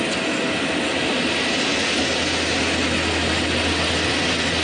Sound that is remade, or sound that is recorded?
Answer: recorded